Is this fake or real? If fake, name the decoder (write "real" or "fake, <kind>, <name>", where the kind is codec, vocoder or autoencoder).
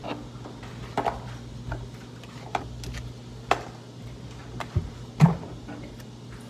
real